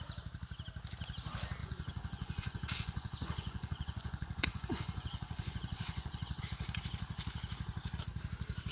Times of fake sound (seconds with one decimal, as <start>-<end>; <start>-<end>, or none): 1.6-6.4